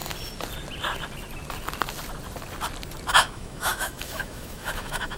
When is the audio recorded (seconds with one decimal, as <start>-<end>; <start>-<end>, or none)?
0.0-3.1